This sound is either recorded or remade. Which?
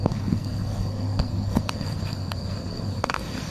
remade